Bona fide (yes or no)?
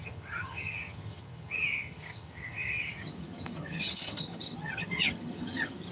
no